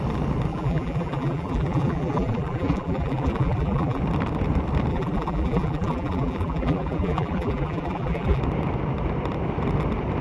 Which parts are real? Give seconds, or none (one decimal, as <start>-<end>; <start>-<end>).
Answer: 0.0-0.5; 4.0-4.9; 8.4-10.2